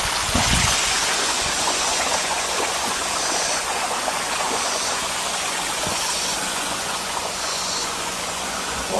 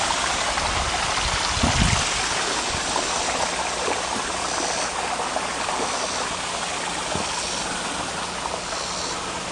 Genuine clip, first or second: second